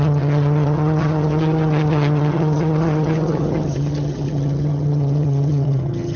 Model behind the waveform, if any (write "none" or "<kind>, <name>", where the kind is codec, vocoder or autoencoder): vocoder, HiFi-GAN